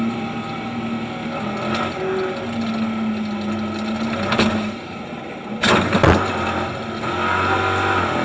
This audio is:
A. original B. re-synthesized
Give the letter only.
A